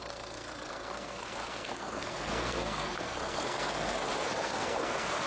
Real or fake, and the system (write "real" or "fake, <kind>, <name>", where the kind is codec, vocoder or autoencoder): fake, codec, SNAC